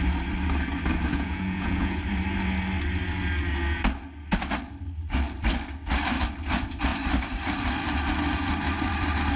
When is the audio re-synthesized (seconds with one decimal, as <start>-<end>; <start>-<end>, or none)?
1.1-2.0